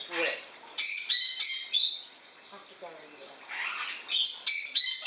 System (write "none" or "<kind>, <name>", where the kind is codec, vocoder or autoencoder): none